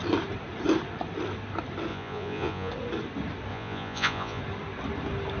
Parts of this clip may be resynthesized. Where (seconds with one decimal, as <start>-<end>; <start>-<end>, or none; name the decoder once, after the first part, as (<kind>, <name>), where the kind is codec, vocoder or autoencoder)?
1.9-2.7 (vocoder, Vocos); 3.5-4.4